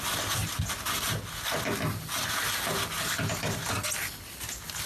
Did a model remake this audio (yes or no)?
no